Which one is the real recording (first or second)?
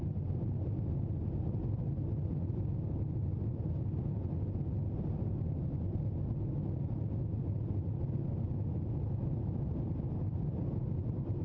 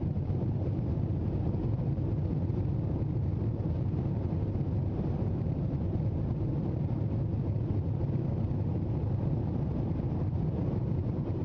first